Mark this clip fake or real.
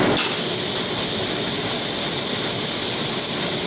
real